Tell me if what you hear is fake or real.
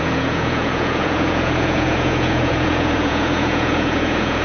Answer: fake